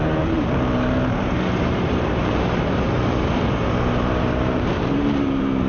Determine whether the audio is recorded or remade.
remade